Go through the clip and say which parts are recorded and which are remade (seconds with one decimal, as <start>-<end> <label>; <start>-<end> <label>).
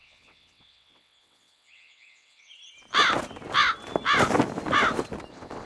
0.0-2.5 remade; 2.5-5.3 recorded; 5.3-5.7 remade